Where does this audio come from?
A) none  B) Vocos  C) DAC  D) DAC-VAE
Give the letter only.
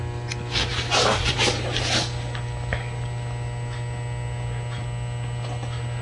A